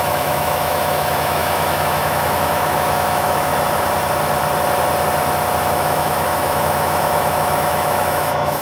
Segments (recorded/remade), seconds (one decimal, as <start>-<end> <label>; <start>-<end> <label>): 0.0-3.5 remade; 3.5-5.6 recorded; 5.6-8.6 remade